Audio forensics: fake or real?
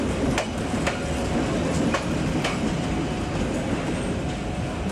real